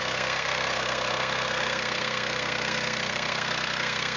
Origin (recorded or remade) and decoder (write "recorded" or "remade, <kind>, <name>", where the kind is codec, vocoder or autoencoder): remade, codec, SNAC